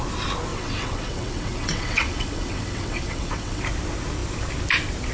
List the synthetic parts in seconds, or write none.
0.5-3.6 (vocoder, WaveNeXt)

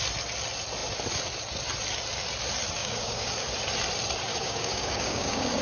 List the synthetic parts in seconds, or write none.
2.8-3.3 (codec, DAC); 4.3-5.6